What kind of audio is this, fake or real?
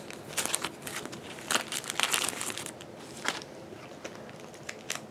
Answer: real